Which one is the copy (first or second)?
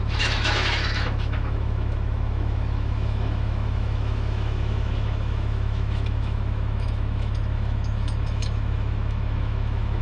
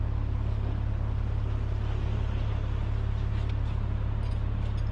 first